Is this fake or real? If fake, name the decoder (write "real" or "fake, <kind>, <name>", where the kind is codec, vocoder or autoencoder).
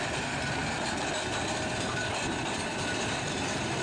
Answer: fake, vocoder, BigVGAN v2